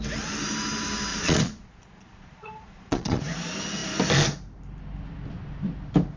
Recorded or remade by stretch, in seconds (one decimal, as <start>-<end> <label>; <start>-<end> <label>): 0.0-1.1 recorded; 1.1-3.2 remade; 3.2-6.2 recorded